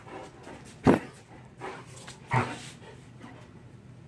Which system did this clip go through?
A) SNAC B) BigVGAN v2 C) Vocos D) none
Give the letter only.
D